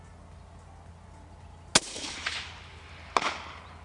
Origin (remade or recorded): recorded